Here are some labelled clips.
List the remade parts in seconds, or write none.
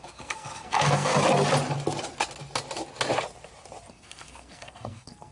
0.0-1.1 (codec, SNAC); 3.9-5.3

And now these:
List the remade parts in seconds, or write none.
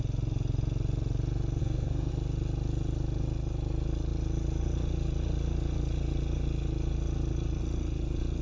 1.6-2.1 (codec, SNAC)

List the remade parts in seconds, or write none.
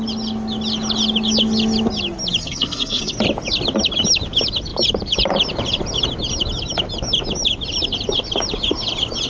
2.4-3.1 (codec, SNAC)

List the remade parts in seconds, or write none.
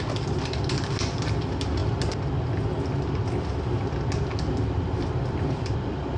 none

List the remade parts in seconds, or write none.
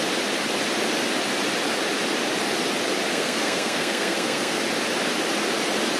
3.1-4.6 (codec, SNAC)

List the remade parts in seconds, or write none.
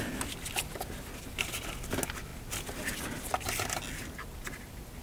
none